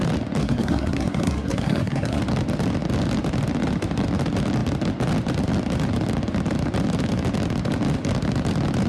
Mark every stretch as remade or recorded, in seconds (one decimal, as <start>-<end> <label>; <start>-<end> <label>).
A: 0.0-0.4 recorded; 0.4-2.2 remade; 2.2-8.9 recorded